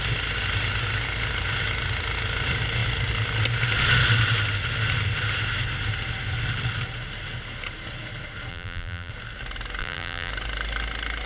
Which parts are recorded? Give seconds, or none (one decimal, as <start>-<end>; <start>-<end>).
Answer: 0.0-8.5; 9.1-9.8; 10.3-11.3